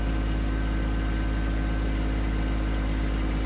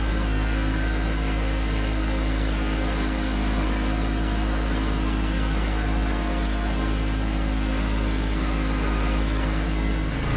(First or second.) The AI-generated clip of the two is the second